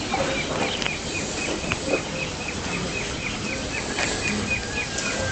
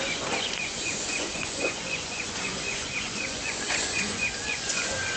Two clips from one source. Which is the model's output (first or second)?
second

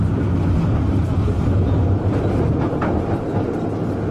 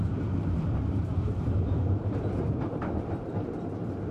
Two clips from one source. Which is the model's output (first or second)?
second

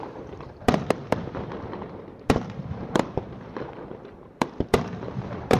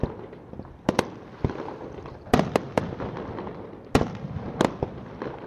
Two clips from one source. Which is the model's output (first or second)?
first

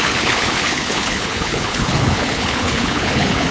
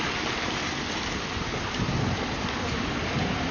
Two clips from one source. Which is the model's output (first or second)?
first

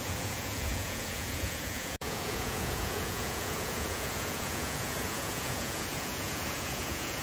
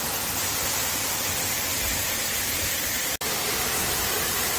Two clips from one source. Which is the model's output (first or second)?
first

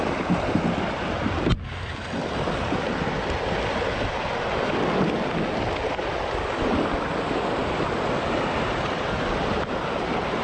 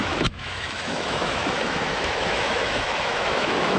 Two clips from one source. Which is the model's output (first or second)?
second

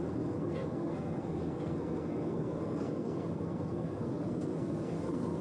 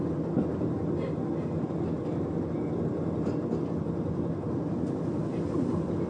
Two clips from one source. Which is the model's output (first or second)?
first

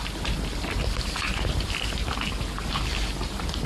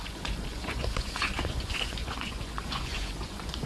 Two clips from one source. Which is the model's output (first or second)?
second